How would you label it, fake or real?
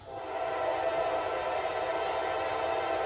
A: real